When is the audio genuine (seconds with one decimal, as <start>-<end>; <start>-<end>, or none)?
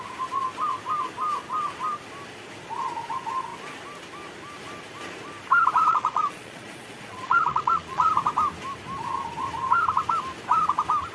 0.0-5.9; 8.1-11.1